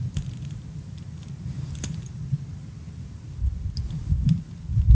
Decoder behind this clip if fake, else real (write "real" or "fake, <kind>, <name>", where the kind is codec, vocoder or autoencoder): fake, vocoder, BigVGAN v2